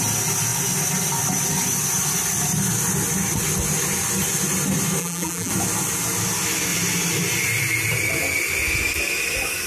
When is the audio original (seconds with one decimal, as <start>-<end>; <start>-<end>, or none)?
0.0-5.0; 5.5-9.7